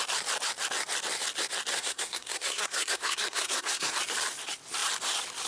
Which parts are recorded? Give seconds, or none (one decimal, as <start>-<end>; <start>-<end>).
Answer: 0.0-1.7; 3.9-5.5